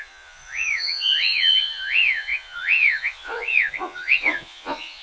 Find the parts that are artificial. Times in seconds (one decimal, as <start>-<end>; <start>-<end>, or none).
0.0-5.0